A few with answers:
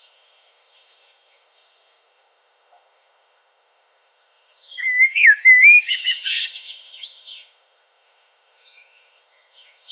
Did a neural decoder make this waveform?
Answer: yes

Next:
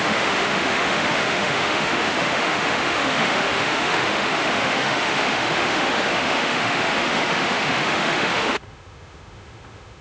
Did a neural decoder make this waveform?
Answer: yes